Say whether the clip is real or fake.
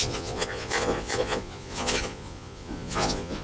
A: fake